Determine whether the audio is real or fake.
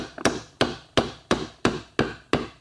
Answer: real